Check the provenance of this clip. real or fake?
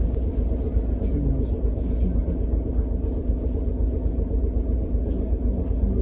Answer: real